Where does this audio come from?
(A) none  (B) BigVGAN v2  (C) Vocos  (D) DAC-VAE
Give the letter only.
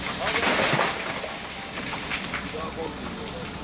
A